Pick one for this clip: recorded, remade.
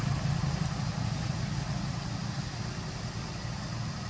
recorded